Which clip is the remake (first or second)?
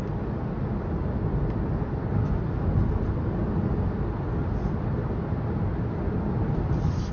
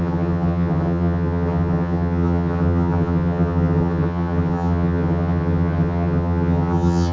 second